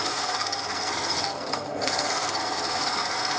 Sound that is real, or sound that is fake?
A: fake